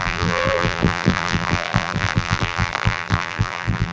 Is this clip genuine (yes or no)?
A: no